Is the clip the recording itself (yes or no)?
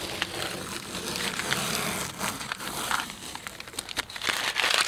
no